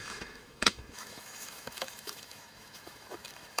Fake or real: fake